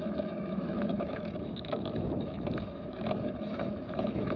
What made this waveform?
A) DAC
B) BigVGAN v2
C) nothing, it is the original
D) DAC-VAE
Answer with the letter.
D